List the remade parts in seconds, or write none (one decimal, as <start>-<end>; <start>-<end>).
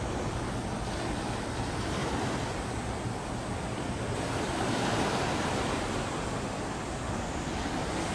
2.0-6.9